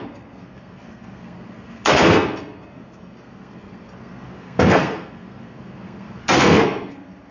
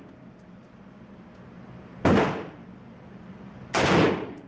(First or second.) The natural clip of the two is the second